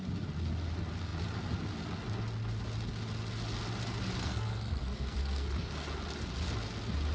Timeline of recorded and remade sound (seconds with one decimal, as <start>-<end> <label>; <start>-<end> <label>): 0.0-4.2 recorded; 4.2-5.7 remade; 5.7-7.1 recorded